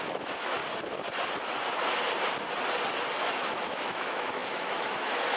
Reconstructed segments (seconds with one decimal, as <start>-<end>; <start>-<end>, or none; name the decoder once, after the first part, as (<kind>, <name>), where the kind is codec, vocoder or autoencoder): 0.0-0.6 (autoencoder, DAC-VAE); 3.2-5.4